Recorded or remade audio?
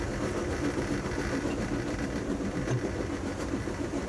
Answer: remade